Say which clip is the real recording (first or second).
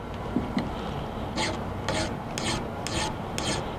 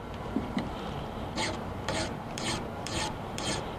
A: first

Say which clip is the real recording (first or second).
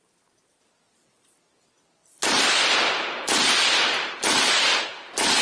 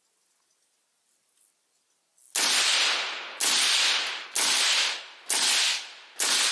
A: second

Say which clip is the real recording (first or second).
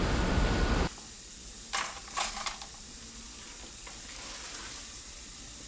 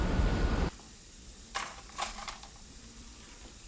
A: first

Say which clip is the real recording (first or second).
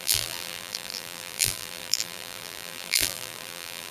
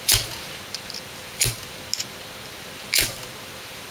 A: second